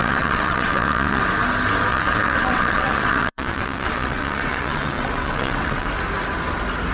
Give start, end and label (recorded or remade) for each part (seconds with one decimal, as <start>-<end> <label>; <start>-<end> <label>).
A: 0.0-1.2 remade; 1.2-1.9 recorded; 1.9-5.9 remade; 5.9-6.9 recorded